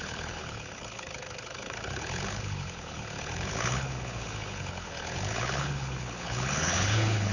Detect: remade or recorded remade